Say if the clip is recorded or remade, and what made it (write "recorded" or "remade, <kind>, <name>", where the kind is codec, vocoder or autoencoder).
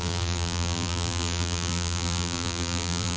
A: remade, vocoder, BigVGAN v2